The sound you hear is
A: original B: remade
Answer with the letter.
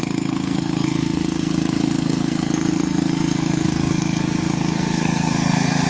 B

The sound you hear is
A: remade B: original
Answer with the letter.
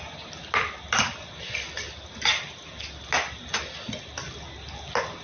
B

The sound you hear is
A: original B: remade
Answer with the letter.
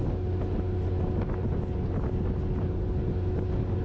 A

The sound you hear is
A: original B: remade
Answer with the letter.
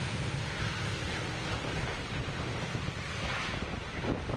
A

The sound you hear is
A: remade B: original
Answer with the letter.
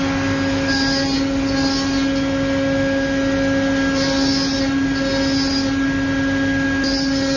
B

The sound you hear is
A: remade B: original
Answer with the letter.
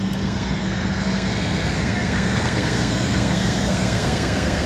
A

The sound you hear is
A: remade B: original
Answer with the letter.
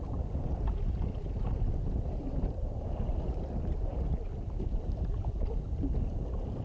B